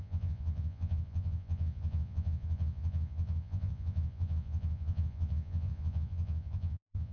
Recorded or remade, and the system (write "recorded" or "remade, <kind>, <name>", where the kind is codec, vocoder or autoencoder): remade, vocoder, Vocos